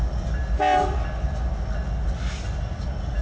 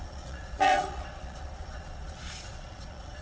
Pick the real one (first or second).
first